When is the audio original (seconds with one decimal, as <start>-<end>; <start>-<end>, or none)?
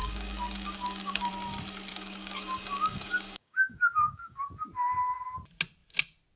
1.3-1.9; 4.4-6.4